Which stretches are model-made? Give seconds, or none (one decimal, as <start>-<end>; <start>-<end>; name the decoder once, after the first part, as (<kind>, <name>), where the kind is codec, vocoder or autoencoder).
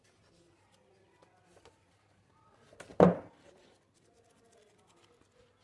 none